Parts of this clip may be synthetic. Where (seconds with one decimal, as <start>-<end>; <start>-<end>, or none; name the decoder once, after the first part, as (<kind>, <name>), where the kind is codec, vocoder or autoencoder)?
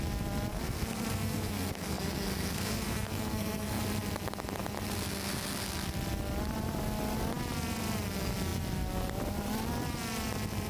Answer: 0.5-3.8 (codec, SNAC)